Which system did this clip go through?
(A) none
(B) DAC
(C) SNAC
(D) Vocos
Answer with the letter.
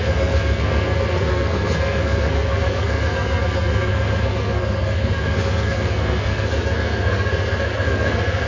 C